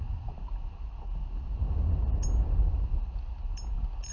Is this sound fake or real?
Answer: real